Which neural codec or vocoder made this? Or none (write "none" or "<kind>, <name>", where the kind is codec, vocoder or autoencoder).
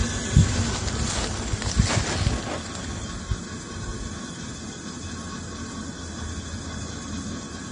none